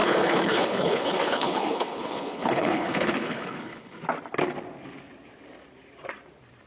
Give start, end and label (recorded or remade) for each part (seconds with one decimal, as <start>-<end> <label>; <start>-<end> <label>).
0.0-4.0 remade; 4.0-6.7 recorded